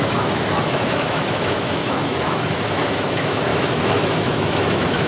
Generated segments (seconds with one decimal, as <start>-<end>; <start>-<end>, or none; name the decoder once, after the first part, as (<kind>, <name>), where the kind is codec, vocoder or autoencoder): 0.0-5.1 (autoencoder, DAC-VAE)